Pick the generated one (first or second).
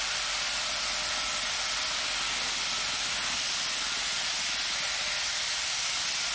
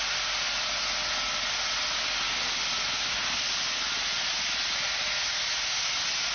first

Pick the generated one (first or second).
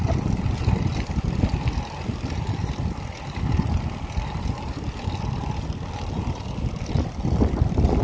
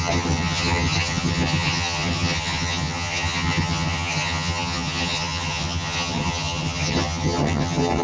second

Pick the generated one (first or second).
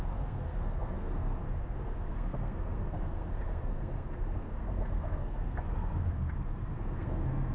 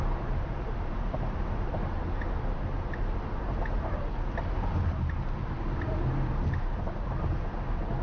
first